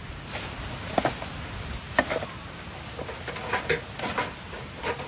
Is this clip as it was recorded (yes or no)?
yes